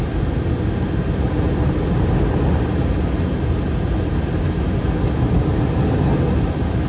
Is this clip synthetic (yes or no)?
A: no